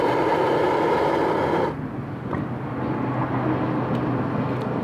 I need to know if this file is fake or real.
real